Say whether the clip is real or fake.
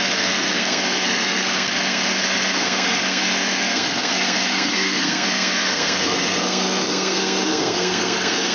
fake